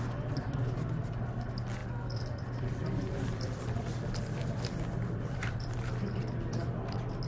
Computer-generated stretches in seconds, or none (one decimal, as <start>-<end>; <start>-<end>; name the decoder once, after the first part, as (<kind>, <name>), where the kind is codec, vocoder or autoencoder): 1.8-6.2 (vocoder, BigVGAN v2)